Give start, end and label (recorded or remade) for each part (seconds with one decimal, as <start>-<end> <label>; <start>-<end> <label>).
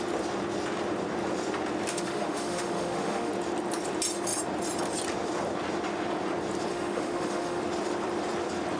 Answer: 0.0-1.9 recorded; 1.9-3.3 remade; 3.3-6.7 recorded; 6.7-7.6 remade; 7.6-8.8 recorded